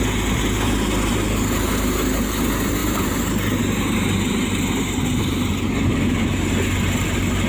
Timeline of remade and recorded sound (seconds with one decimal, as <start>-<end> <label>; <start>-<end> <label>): 0.0-7.5 recorded

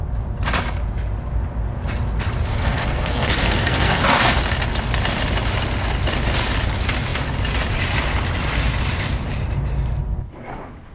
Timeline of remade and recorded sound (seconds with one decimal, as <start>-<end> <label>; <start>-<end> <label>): 0.0-2.5 recorded; 2.5-4.0 remade; 4.0-10.9 recorded

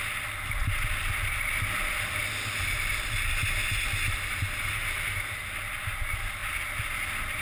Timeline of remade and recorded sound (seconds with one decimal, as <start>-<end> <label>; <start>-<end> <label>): 0.0-7.4 recorded

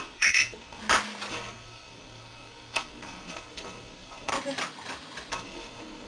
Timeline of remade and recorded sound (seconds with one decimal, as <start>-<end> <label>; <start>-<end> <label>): 0.0-0.8 remade; 0.8-1.3 recorded; 1.3-4.3 remade; 4.3-5.3 recorded; 5.3-6.1 remade

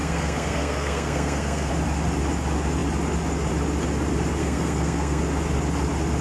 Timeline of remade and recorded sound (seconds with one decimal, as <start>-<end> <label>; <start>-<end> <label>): 0.0-1.7 remade; 1.7-4.4 recorded; 4.4-5.2 remade; 5.2-6.2 recorded

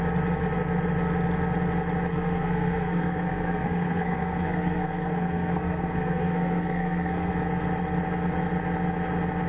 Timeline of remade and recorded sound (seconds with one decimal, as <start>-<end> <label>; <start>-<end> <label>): 0.0-2.1 recorded; 2.1-7.3 remade; 7.3-9.5 recorded

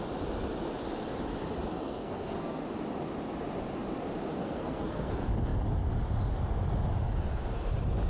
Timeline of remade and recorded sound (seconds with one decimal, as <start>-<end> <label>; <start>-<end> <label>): 0.0-1.7 recorded; 1.7-2.6 remade; 2.6-4.3 recorded; 4.3-5.1 remade; 5.1-8.1 recorded